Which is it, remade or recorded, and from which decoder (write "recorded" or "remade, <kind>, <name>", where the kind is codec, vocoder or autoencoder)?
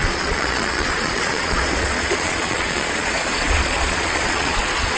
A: remade, vocoder, Vocos